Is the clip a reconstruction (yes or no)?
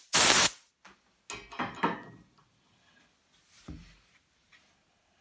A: no